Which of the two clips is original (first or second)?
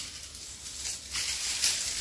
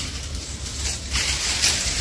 first